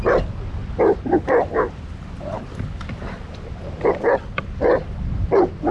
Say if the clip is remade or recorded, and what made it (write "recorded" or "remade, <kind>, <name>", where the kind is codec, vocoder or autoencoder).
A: recorded